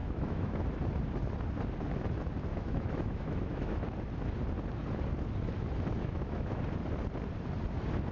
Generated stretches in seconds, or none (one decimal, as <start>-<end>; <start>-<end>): 0.0-0.6; 2.5-3.8; 6.0-6.6